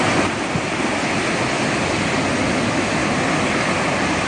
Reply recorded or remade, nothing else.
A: recorded